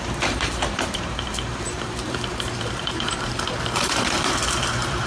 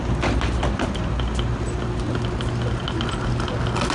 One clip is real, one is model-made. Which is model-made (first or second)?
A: first